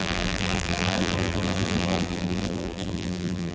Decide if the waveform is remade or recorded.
remade